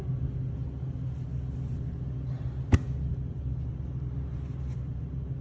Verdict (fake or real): real